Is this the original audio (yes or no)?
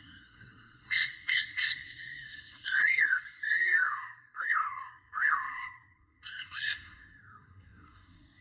no